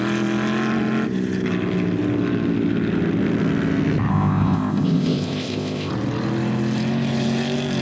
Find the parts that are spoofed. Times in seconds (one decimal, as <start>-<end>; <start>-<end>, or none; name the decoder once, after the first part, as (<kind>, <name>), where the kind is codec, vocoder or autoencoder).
4.1-5.9 (codec, ZipCodec)